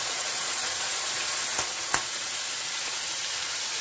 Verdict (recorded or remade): remade